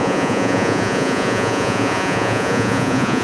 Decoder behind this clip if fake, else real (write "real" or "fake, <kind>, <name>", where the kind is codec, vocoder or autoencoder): fake, vocoder, Vocos